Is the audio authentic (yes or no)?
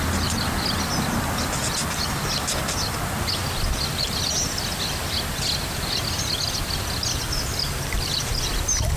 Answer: yes